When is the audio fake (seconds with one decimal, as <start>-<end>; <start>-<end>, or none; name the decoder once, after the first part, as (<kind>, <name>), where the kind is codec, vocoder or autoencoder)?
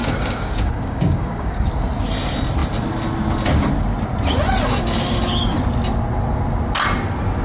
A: 0.0-1.7 (codec, DAC)